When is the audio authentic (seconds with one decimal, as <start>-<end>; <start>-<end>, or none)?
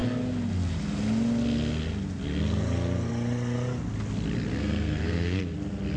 0.0-4.5; 5.4-6.0